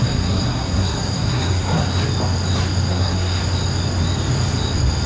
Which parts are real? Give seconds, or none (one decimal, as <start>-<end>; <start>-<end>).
1.9-2.9; 3.4-5.1